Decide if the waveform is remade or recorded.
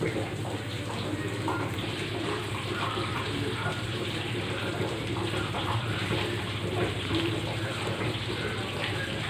remade